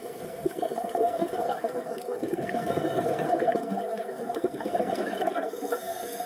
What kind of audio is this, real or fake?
fake